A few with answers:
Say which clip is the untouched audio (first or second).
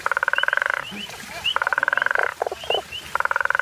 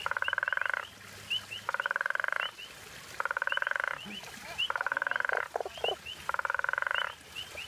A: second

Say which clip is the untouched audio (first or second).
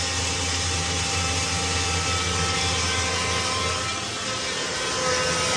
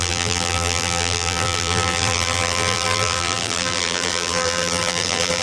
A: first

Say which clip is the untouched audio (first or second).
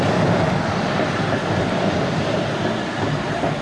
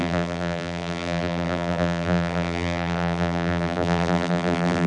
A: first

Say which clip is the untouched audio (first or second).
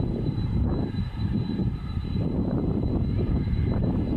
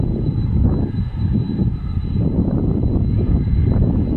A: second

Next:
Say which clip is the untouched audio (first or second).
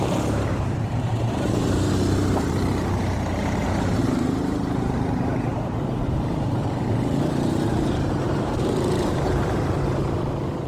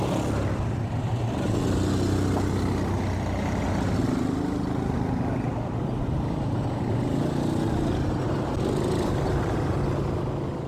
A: second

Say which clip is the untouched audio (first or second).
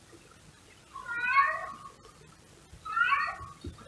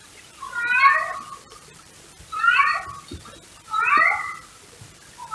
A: first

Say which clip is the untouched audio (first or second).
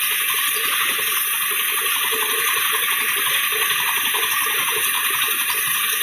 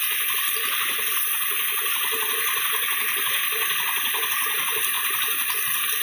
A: second